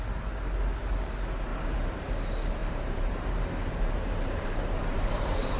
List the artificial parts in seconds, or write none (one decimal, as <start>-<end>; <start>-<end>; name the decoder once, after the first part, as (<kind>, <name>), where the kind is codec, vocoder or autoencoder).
1.5-2.1 (vocoder, BigVGAN v2); 2.6-5.6